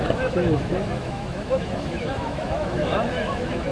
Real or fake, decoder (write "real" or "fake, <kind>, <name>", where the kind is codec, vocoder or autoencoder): fake, autoencoder, DAC-VAE